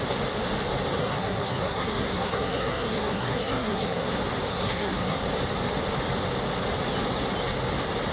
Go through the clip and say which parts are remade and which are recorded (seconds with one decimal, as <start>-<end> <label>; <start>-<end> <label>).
0.0-1.0 recorded; 1.0-4.1 remade; 4.1-4.5 recorded; 4.5-5.2 remade; 5.2-8.1 recorded